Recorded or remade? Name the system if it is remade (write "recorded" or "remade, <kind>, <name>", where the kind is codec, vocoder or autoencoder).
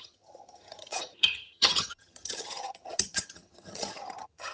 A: remade, vocoder, HiFi-GAN